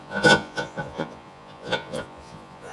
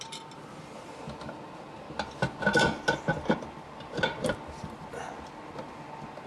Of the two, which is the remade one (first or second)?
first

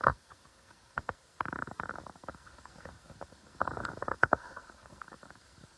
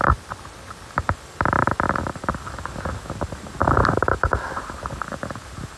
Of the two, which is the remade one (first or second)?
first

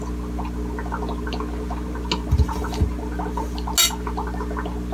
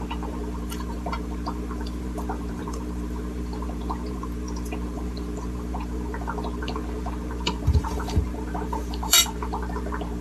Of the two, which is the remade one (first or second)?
second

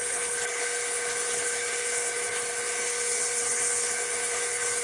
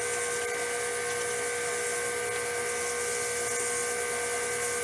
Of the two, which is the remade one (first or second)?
first